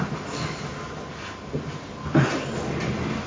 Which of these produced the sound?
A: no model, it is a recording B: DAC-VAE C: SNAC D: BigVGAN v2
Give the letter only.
A